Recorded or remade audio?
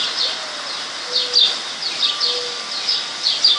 recorded